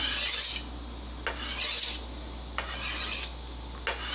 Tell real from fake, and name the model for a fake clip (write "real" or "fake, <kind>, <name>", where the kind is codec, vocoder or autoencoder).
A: real